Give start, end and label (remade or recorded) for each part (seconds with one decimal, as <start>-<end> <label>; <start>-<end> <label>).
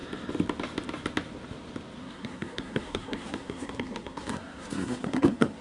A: 0.0-2.0 recorded; 2.0-5.6 remade